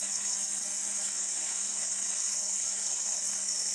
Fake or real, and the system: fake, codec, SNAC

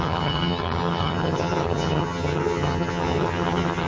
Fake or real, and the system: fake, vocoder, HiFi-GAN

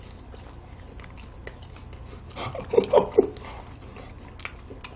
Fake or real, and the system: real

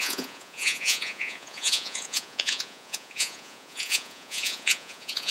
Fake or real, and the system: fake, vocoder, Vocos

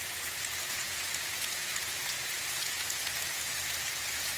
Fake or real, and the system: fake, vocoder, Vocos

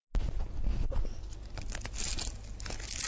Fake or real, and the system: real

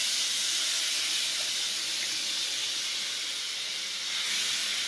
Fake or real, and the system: real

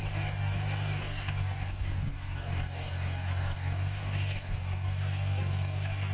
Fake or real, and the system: fake, codec, DAC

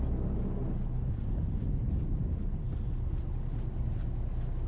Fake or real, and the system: real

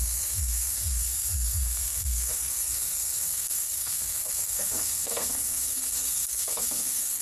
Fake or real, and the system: fake, codec, SNAC